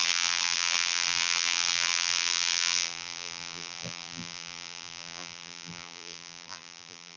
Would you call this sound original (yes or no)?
no